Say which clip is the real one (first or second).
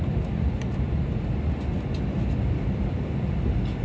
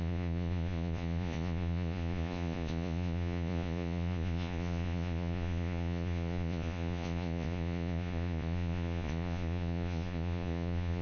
first